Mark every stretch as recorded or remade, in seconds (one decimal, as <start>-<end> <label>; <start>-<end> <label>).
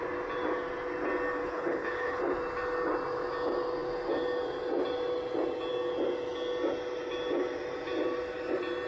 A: 0.0-1.4 recorded; 1.4-2.2 remade; 2.2-8.9 recorded